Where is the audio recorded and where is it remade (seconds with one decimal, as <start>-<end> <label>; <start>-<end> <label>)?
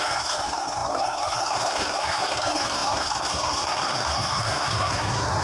0.0-5.4 remade